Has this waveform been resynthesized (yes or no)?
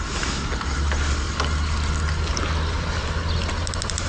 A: no